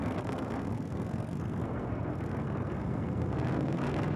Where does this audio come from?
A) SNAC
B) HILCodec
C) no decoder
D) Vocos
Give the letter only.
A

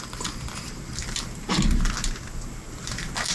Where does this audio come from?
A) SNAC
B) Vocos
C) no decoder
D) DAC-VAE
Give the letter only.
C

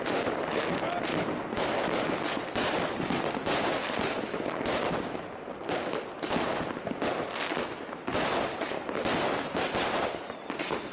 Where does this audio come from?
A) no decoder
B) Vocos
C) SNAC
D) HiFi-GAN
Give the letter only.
A